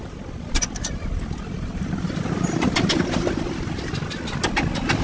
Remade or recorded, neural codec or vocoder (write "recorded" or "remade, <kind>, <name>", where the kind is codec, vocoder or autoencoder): recorded